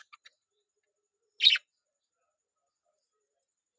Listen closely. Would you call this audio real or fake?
real